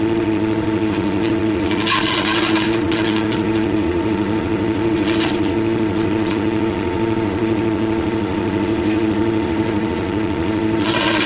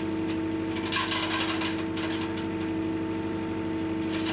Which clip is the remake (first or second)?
first